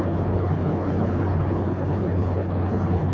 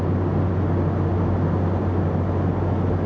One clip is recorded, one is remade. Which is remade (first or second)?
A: first